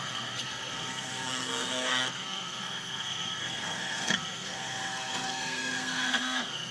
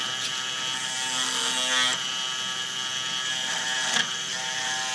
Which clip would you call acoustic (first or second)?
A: second